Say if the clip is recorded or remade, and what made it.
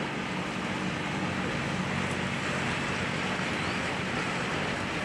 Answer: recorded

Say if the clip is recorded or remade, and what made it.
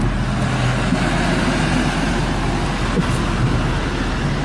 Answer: recorded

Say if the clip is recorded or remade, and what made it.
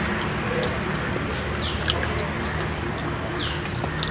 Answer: recorded